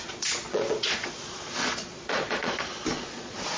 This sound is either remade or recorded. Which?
remade